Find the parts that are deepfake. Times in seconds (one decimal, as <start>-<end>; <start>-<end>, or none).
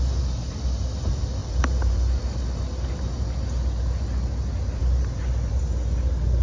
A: 1.4-2.2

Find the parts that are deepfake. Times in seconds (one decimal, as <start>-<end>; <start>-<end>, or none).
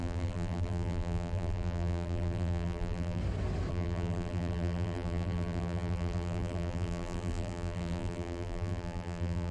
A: 0.0-3.2; 3.7-9.5